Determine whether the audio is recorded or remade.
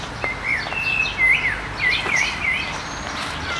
recorded